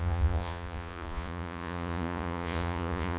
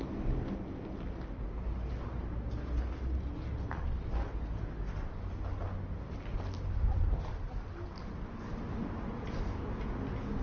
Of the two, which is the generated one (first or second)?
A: first